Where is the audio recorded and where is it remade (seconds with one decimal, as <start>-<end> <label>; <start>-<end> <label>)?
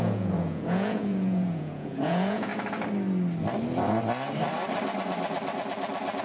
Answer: 0.0-2.5 remade; 2.5-6.2 recorded